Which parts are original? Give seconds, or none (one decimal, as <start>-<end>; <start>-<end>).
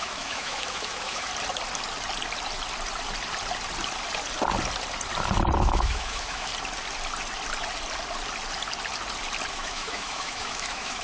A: 1.3-5.6; 6.5-9.5